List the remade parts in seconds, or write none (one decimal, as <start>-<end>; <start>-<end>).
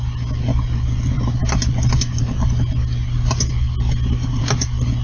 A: none